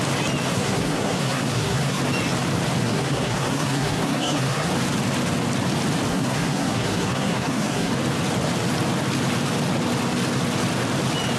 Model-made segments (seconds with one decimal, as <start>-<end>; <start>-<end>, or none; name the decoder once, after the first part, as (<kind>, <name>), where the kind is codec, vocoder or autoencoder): 0.5-2.0 (codec, SNAC); 2.8-4.7; 6.1-7.9